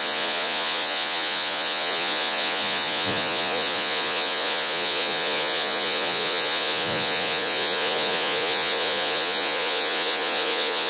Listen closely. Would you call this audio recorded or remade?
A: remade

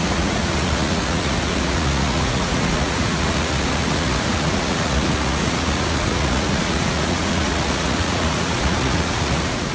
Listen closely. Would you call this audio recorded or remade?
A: remade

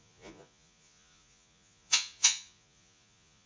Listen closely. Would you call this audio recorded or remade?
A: remade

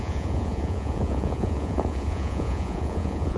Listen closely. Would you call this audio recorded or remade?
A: remade